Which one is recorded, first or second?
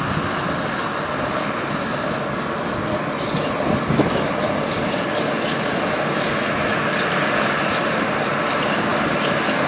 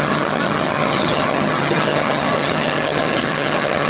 first